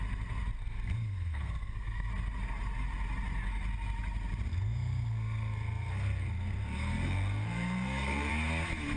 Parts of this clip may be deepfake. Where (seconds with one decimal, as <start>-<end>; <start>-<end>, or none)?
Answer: 0.6-2.1; 4.5-8.3